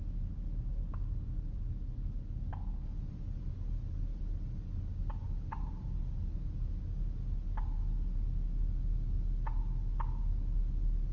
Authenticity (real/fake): real